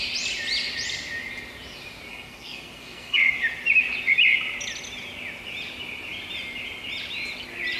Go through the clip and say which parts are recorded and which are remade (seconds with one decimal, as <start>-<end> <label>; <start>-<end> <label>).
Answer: 0.0-2.1 recorded; 2.1-3.3 remade; 3.3-7.8 recorded